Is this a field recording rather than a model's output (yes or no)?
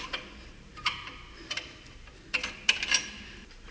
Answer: yes